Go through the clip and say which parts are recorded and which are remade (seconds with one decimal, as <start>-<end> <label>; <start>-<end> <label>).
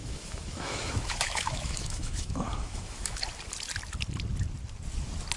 0.0-3.2 remade; 3.2-5.4 recorded